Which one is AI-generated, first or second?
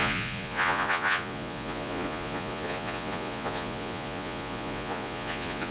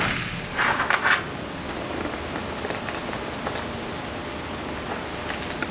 first